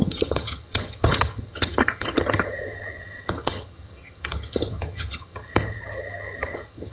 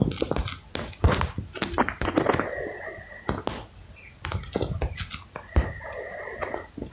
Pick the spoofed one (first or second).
first